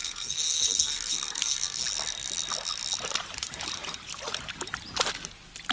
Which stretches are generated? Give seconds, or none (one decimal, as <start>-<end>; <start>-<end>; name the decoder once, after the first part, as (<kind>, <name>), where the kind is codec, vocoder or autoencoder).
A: 0.0-1.8 (codec, SNAC)